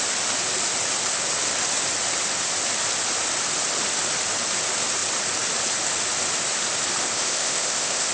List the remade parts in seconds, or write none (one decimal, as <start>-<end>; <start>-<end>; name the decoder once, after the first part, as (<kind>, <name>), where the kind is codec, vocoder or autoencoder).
7.0-8.1 (codec, ZipCodec)